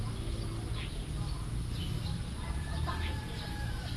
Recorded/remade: recorded